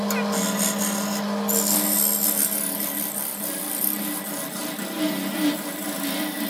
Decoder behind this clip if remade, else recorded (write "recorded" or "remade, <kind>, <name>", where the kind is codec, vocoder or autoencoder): recorded